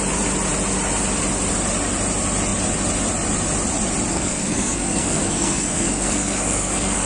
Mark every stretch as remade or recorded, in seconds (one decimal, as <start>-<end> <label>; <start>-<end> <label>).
0.0-4.1 recorded; 4.1-7.1 remade